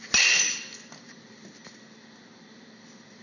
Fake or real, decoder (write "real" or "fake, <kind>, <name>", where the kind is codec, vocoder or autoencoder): real